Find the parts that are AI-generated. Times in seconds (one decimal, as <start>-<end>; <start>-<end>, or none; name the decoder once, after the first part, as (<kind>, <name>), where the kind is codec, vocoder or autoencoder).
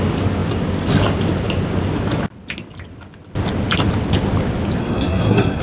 4.8-5.6 (codec, SNAC)